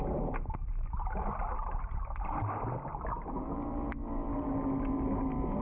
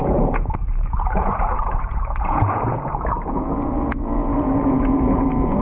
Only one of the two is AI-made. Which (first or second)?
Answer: second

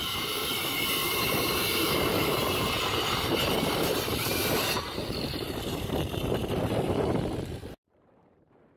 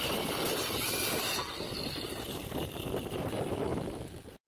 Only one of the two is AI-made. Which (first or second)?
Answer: first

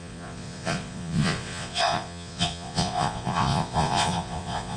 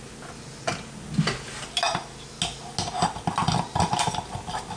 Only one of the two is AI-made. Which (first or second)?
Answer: first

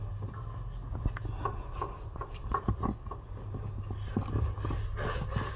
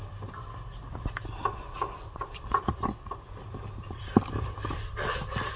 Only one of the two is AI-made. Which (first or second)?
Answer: second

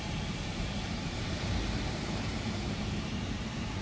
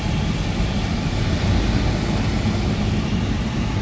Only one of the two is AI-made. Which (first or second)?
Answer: first